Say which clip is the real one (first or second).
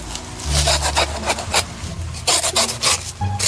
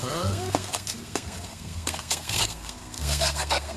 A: first